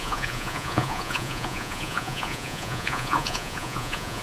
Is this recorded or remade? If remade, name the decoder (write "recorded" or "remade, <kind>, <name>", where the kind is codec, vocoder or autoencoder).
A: remade, vocoder, Vocos